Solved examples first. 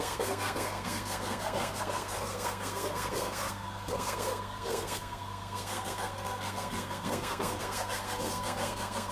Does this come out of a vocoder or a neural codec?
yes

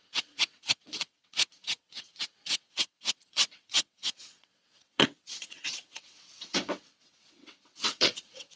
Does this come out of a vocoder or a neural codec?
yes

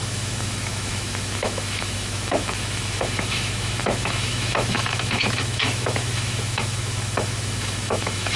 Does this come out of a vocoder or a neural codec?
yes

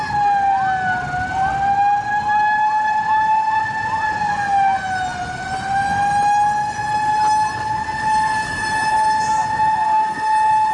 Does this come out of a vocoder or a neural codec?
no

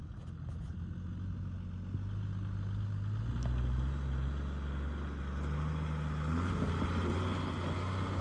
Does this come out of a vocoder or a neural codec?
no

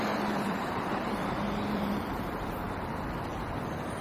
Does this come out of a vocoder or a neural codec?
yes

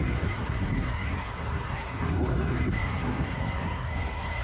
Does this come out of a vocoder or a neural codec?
yes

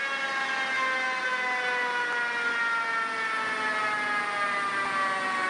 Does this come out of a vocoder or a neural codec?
no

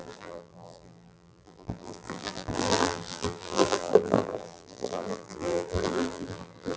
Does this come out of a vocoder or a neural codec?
yes